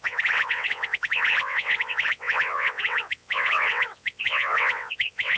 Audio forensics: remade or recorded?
remade